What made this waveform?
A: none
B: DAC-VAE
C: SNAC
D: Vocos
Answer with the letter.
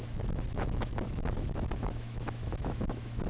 B